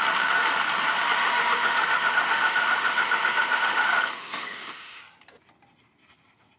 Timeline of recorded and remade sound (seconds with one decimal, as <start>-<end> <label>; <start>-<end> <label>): 0.0-1.2 recorded; 1.2-5.0 remade; 5.0-6.6 recorded

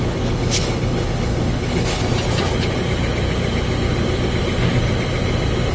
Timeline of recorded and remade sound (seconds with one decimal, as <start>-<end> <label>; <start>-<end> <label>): 0.0-2.0 remade; 2.0-5.7 recorded

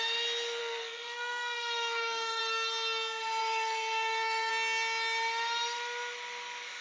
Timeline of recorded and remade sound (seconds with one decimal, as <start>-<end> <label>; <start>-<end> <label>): 0.0-0.6 recorded; 0.6-2.4 remade; 2.4-3.4 recorded; 3.4-4.5 remade; 4.5-6.8 recorded

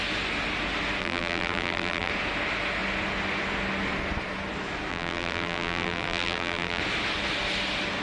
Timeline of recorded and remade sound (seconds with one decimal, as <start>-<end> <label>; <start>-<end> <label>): 0.0-1.0 recorded; 1.0-2.1 remade; 2.1-4.9 recorded; 4.9-6.8 remade; 6.8-8.0 recorded

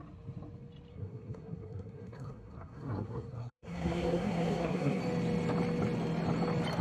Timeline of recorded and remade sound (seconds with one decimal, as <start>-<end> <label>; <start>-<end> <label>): 0.0-0.9 recorded; 0.9-5.0 remade; 5.0-6.8 recorded

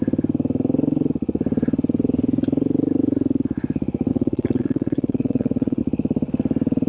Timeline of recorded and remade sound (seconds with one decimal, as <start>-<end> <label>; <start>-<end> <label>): 0.0-4.1 recorded; 4.1-5.8 remade; 5.8-6.9 recorded